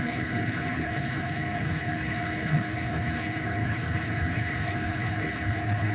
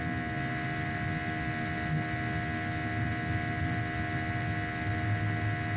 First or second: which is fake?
first